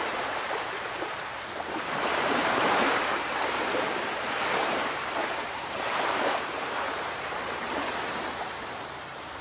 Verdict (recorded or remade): remade